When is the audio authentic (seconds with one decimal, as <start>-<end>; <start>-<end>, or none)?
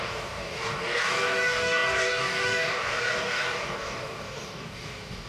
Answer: none